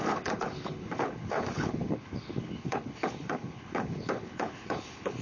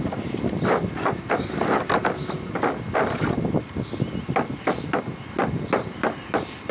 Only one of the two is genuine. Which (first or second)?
second